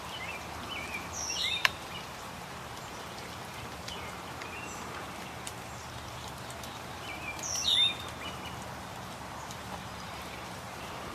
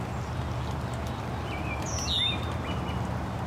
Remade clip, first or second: first